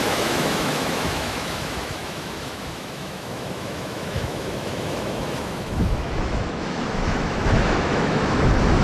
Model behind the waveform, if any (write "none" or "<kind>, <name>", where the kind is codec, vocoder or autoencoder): autoencoder, DAC-VAE